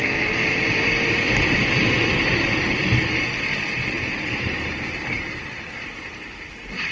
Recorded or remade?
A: recorded